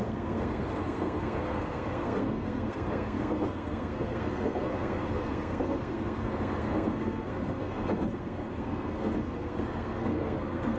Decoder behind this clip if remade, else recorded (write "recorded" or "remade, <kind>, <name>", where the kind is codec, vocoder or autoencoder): remade, codec, SNAC